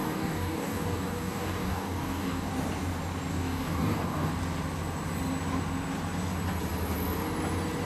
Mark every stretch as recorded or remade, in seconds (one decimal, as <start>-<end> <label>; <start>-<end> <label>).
0.0-2.5 remade; 2.5-3.3 recorded; 3.3-4.3 remade; 4.3-7.9 recorded